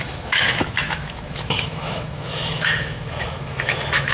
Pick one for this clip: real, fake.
fake